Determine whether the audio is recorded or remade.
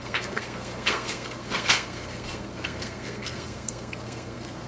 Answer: remade